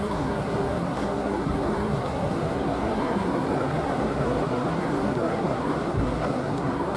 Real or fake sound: fake